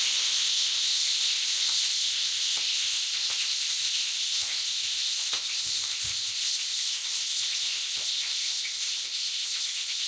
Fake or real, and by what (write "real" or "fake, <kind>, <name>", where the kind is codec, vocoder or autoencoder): fake, codec, ZipCodec